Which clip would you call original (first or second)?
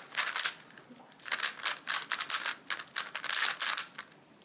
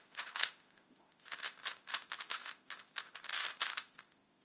first